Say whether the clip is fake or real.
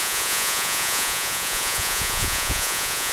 fake